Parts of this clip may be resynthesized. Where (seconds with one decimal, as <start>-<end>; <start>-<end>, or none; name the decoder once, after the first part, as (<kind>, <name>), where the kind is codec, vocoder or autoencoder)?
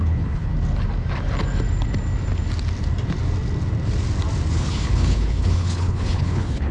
0.0-0.5 (codec, HILCodec); 4.5-6.7